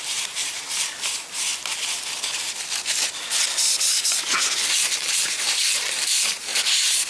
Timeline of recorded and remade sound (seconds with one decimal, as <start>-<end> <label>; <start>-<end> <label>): 0.0-1.5 remade; 1.5-4.7 recorded; 4.7-6.5 remade; 6.5-7.1 recorded